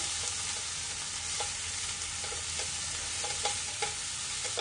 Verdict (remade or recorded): recorded